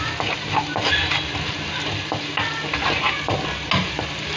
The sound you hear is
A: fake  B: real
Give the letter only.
B